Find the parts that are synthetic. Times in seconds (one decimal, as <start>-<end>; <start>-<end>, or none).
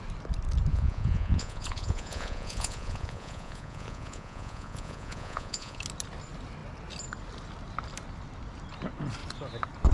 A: 0.7-5.8